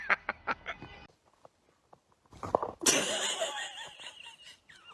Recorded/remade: recorded